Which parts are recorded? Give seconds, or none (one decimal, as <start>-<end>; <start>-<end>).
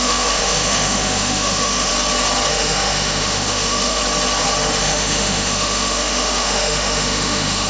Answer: 1.9-2.5; 4.0-4.8